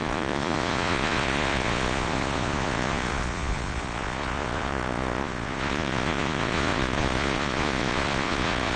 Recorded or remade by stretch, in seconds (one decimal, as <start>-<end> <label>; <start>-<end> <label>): 0.0-8.8 remade